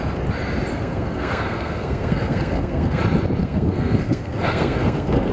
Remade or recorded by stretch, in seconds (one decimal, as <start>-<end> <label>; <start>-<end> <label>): 0.0-0.7 recorded; 0.7-3.0 remade; 3.0-3.4 recorded; 3.4-5.3 remade